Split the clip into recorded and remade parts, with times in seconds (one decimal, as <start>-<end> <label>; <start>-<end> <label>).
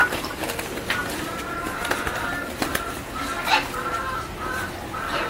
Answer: 0.0-0.5 remade; 0.5-5.3 recorded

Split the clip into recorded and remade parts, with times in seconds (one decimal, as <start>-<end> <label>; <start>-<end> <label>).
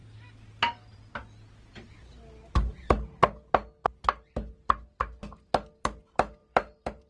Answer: 0.0-6.4 recorded; 6.4-7.1 remade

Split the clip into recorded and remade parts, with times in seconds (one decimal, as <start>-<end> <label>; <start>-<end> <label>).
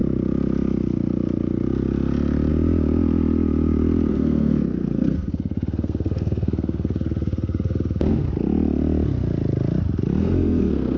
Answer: 0.0-4.1 recorded; 4.1-8.3 remade; 8.3-10.2 recorded; 10.2-11.0 remade